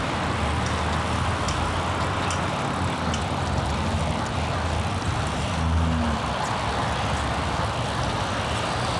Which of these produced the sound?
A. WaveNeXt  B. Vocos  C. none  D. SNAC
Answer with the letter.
C